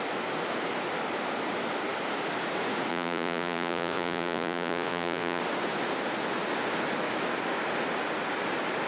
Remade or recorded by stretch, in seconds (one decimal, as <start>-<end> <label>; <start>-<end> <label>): 0.0-2.9 recorded; 2.9-5.4 remade; 5.4-8.9 recorded